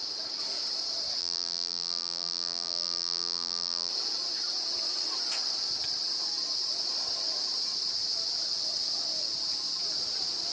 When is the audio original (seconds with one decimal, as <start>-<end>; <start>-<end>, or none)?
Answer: 0.0-1.2; 3.9-10.5